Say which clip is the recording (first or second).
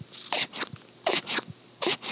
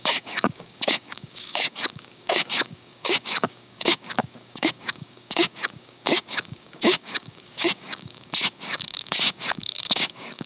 first